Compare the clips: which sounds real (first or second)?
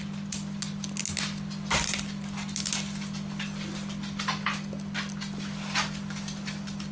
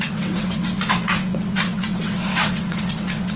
first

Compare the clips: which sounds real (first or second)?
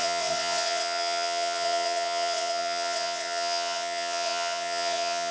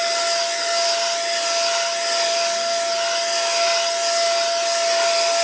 second